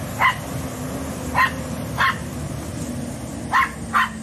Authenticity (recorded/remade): recorded